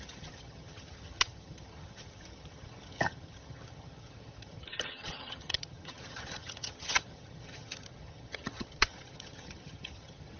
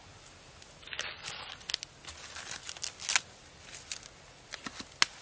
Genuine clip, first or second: second